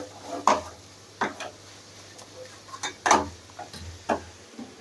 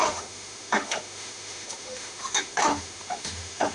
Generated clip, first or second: second